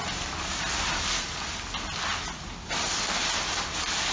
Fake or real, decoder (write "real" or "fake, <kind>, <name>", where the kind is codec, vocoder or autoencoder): real